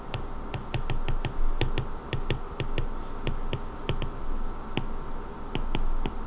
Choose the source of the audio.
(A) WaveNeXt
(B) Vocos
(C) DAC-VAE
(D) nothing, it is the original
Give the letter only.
D